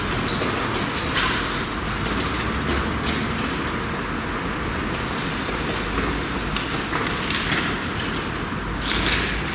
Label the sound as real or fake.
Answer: real